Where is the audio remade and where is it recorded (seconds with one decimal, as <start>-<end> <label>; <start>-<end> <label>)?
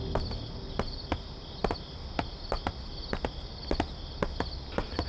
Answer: 0.0-5.1 recorded